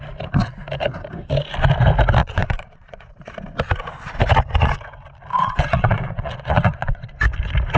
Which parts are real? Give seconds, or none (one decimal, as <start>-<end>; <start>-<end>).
0.0-2.2; 3.3-5.3; 7.1-7.8